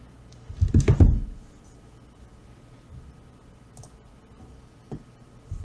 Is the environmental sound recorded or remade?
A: recorded